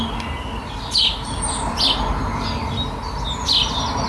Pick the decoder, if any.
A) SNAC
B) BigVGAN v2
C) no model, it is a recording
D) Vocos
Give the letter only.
C